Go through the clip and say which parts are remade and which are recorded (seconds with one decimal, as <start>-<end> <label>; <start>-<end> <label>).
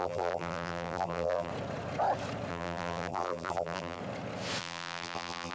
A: 0.0-1.5 remade; 1.5-2.5 recorded; 2.5-4.0 remade; 4.0-4.6 recorded; 4.6-5.5 remade